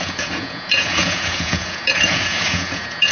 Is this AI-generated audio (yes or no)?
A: yes